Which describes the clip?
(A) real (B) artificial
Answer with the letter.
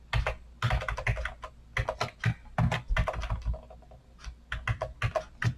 A